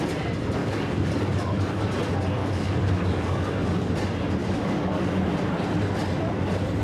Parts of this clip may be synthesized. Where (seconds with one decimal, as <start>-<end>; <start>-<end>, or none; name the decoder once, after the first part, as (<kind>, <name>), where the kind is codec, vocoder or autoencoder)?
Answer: 0.6-1.8 (codec, DAC); 2.4-3.9; 4.4-5.1